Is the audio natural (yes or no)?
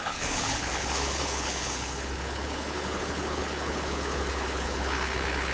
no